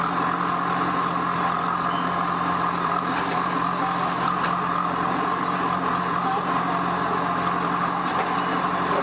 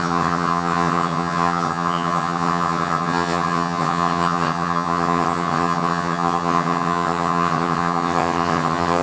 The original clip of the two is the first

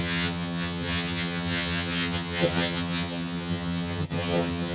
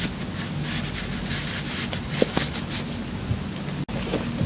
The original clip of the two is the second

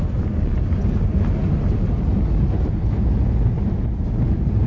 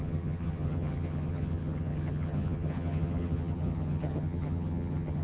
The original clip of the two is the first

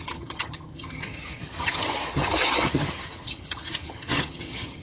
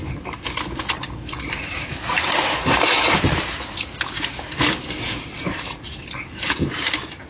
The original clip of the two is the second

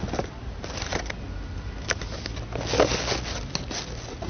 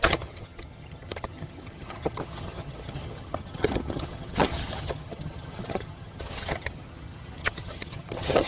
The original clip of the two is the first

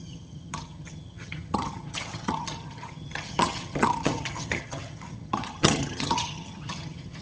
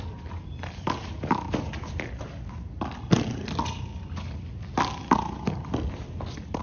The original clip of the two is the second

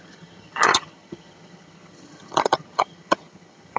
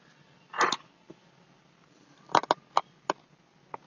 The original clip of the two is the second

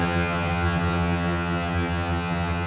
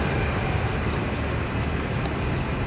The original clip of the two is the second